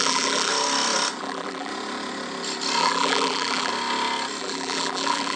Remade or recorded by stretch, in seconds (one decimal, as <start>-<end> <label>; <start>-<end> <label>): 0.0-0.5 remade; 0.5-1.2 recorded; 1.2-1.7 remade; 1.7-2.8 recorded; 2.8-3.7 remade; 3.7-4.4 recorded; 4.4-5.4 remade